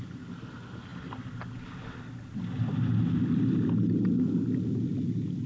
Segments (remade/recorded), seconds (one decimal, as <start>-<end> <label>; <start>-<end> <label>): 0.0-5.5 recorded

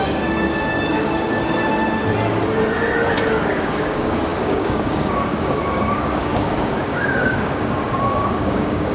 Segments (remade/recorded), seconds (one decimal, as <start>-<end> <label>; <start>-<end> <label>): 0.0-1.6 remade; 1.6-3.5 recorded; 3.5-8.9 remade

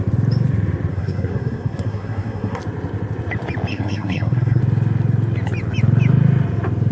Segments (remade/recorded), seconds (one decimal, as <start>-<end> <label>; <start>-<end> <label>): 0.0-0.9 recorded; 0.9-2.6 remade; 2.6-3.7 recorded; 3.7-4.6 remade; 4.6-6.9 recorded

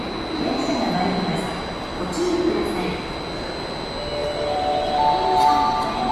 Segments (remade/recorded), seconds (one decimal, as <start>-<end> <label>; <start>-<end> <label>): 0.0-4.2 recorded; 4.2-6.1 remade

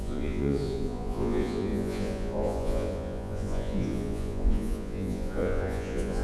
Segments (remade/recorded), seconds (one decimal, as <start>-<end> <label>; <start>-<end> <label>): 0.0-6.2 remade

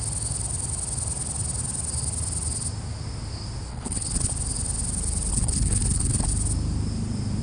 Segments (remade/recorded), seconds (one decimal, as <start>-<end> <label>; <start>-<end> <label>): 0.0-3.7 recorded; 3.7-4.3 remade; 4.3-5.3 recorded; 5.3-6.3 remade; 6.3-7.4 recorded

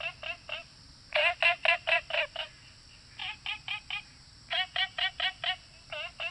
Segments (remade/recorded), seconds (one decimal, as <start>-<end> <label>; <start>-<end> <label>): 0.0-3.2 recorded; 3.2-5.1 remade; 5.1-6.3 recorded